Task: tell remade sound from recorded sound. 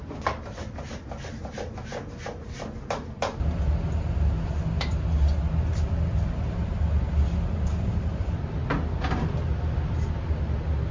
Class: recorded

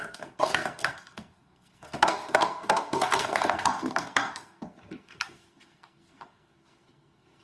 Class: remade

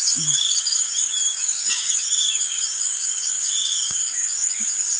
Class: remade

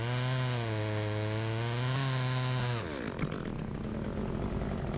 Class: recorded